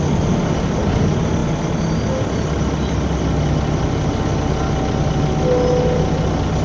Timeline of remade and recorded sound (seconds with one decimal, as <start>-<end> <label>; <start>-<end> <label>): 0.0-6.6 recorded